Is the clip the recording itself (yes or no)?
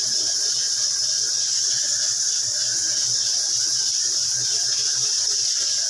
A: yes